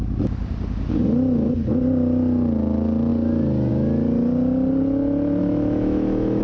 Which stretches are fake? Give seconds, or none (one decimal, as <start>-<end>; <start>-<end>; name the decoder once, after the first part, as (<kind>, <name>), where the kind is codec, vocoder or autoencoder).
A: 5.4-6.4 (autoencoder, DAC-VAE)